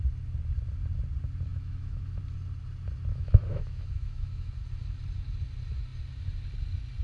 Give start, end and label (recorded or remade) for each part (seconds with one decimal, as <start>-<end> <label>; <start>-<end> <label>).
0.0-1.5 recorded; 1.5-2.2 remade; 2.2-3.1 recorded; 3.1-4.5 remade; 4.5-7.0 recorded